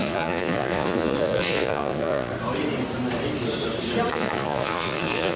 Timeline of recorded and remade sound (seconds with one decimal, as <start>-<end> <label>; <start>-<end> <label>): 0.0-2.3 remade; 2.3-4.1 recorded; 4.1-5.4 remade